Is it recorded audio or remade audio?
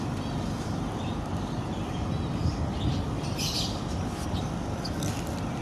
recorded